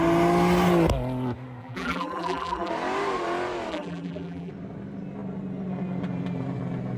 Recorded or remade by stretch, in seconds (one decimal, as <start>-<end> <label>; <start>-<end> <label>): 0.0-1.6 recorded; 1.6-2.7 remade; 2.7-3.7 recorded; 3.7-4.5 remade; 4.5-7.0 recorded